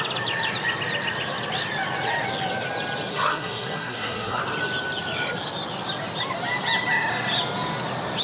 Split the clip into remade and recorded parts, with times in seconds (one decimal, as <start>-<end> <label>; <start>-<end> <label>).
0.0-3.1 recorded; 3.1-4.4 remade; 4.4-8.2 recorded